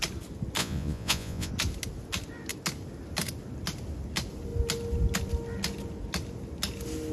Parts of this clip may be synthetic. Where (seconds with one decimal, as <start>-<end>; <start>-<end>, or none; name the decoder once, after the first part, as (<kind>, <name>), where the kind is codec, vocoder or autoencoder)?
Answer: 0.6-1.5 (vocoder, Vocos)